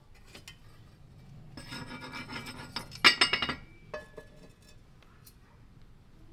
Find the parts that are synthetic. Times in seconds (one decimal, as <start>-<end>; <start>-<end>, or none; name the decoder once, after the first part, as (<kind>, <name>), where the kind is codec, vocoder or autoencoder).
none